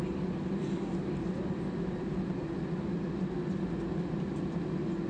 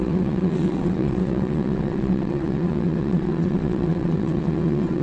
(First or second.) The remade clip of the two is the second